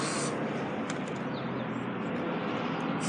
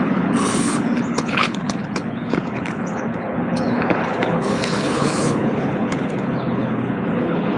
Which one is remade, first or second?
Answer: second